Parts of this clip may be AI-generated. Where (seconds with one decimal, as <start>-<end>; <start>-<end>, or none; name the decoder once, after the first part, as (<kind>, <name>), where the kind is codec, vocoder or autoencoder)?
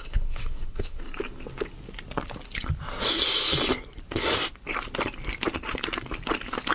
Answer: 0.0-1.0 (codec, SNAC)